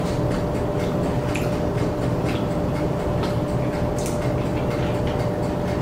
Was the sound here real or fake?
real